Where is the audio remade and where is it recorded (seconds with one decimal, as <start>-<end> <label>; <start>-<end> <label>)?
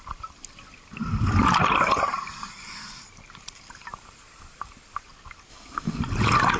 0.0-5.5 recorded; 5.5-6.0 remade; 6.0-6.6 recorded